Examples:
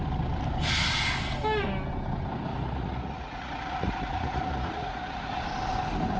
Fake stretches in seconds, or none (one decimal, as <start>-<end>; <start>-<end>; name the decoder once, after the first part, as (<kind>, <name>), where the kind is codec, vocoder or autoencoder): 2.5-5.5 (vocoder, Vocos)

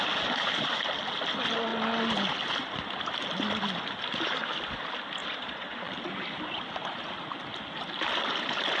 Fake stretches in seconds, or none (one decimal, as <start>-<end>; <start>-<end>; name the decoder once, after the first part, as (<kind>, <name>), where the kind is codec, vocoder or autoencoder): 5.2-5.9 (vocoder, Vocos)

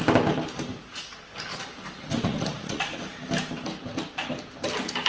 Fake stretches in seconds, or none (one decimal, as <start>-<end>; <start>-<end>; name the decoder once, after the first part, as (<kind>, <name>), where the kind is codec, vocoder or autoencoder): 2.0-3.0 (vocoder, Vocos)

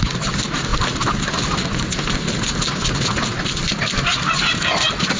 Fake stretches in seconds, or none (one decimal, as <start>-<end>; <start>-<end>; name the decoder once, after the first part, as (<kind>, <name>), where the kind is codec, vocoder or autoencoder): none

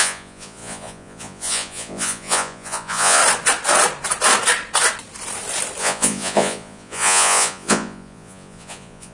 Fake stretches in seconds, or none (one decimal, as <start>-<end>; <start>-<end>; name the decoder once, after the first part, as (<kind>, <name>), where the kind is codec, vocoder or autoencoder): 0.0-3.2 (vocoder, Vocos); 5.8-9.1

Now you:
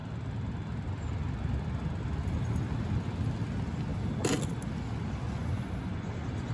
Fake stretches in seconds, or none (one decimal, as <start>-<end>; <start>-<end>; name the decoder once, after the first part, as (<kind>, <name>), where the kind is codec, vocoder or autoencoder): 5.4-6.1 (vocoder, Vocos)

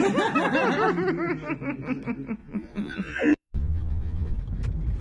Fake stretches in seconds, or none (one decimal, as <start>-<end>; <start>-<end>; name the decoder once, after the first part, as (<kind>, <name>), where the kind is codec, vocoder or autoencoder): 2.4-4.4 (vocoder, Vocos)